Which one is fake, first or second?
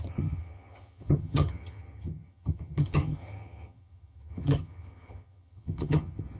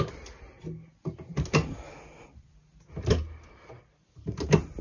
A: first